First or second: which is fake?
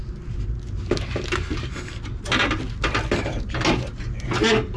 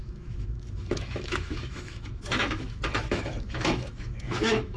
second